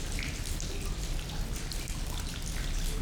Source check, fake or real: real